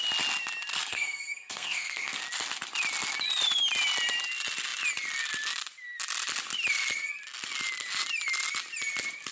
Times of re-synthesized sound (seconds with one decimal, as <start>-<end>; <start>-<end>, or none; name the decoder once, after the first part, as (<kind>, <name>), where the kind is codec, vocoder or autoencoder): 0.7-2.2 (codec, SNAC)